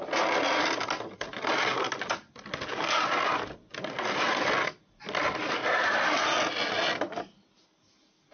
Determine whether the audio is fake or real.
real